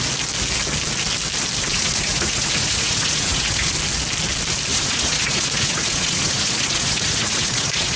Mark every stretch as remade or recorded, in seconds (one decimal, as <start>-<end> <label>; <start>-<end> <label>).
0.0-1.7 recorded; 1.7-3.7 remade; 3.7-4.7 recorded; 4.7-8.0 remade